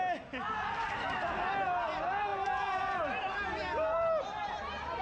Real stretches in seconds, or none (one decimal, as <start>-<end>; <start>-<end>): 0.0-5.0